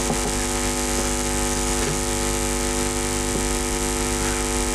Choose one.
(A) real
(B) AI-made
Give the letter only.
A